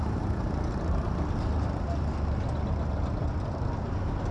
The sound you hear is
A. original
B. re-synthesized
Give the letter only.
A